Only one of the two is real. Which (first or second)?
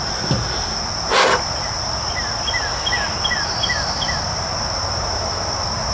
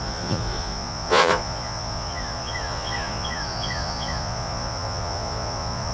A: first